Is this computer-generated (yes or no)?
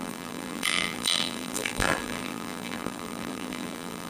yes